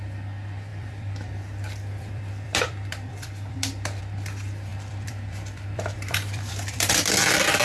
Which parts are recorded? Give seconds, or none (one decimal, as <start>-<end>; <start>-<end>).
0.0-0.7; 4.0-4.7; 6.9-7.6